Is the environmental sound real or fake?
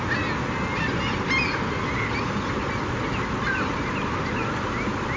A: real